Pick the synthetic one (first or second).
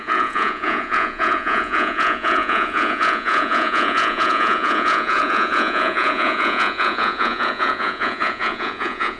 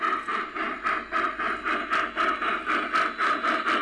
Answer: first